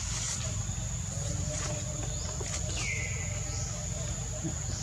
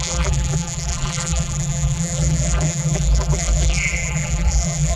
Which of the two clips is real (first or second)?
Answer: first